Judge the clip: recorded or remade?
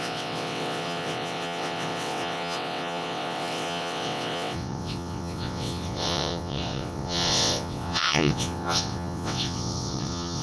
remade